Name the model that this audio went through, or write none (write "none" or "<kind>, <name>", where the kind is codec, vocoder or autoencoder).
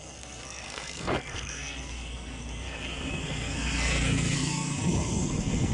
codec, SNAC